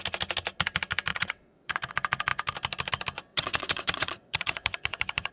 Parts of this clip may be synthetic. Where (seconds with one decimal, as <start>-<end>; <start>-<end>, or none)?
1.1-1.9; 3.3-5.3